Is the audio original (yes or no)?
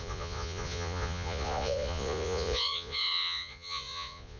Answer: no